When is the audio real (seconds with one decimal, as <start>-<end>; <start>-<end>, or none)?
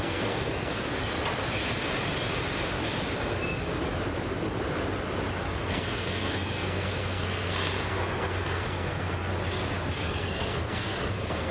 0.9-5.4; 9.3-9.9